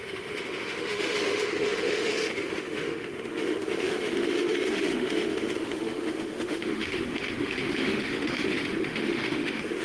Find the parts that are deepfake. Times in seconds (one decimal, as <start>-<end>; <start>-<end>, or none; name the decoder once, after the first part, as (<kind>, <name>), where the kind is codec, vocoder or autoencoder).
0.0-9.8 (autoencoder, DAC-VAE)